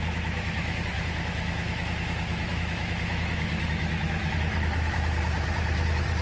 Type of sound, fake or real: fake